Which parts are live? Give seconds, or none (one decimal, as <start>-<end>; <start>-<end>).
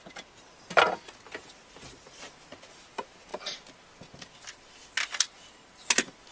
0.0-6.3